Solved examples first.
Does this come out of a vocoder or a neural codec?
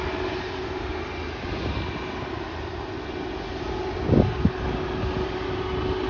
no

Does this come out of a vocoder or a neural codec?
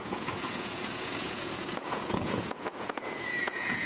yes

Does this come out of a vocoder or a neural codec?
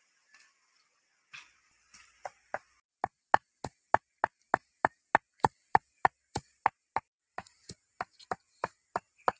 no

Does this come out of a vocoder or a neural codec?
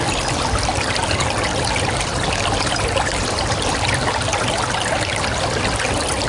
no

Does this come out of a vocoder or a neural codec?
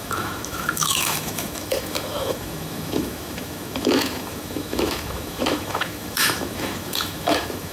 yes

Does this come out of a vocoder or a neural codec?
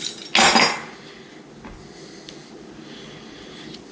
no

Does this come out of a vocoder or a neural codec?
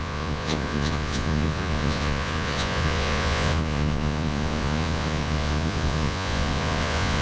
yes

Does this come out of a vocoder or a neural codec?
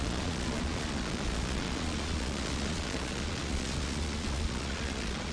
yes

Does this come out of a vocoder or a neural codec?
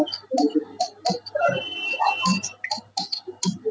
no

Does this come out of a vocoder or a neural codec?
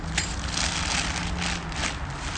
no